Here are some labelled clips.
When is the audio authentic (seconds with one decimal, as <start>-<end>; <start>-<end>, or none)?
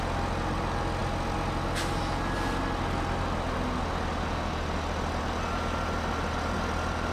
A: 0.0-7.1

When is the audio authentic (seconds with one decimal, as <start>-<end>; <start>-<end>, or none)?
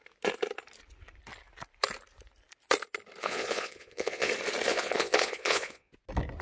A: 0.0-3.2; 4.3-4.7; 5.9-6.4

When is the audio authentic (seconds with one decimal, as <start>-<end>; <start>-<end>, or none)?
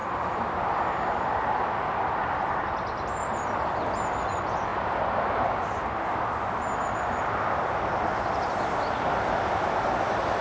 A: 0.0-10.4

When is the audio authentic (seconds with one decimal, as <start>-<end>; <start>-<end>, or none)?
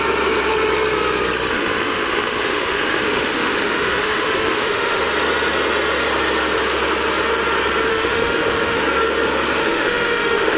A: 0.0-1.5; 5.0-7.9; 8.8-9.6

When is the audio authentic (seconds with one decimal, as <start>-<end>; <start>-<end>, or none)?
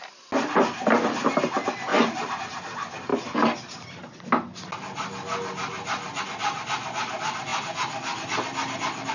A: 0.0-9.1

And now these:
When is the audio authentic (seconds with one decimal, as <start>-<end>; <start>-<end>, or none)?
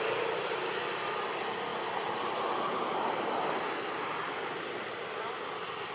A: 0.0-5.9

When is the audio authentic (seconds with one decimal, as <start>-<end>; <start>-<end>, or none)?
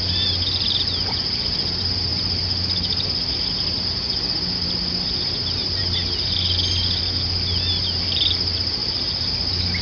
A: 0.0-9.8